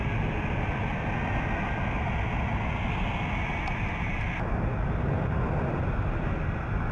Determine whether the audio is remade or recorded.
recorded